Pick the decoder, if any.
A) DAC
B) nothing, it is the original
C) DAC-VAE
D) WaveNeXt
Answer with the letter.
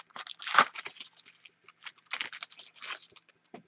B